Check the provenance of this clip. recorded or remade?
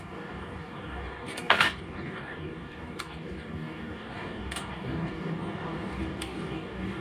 remade